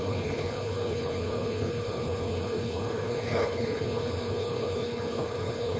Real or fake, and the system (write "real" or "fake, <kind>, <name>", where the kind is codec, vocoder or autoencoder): fake, codec, HILCodec